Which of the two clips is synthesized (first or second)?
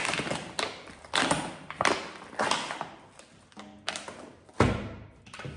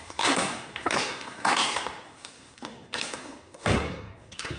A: second